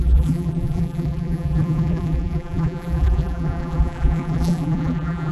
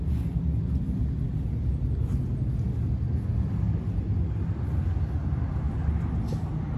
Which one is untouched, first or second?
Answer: second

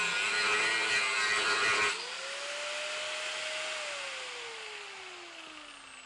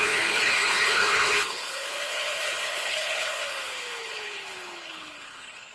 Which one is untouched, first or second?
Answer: first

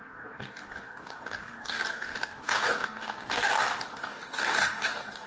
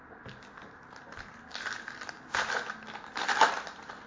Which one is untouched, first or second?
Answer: second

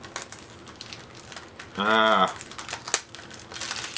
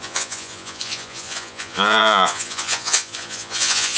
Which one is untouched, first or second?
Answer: first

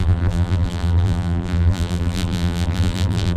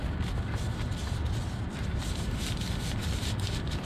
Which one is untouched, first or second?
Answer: second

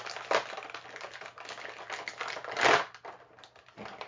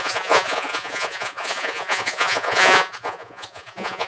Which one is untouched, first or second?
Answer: first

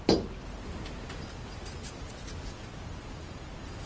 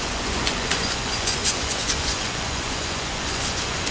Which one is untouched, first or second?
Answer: first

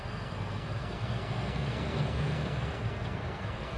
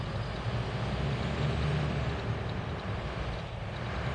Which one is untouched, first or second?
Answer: second